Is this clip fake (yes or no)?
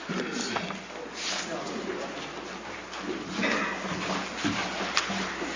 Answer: no